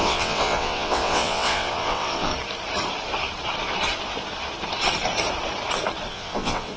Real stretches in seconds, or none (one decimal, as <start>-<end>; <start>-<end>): 2.3-6.1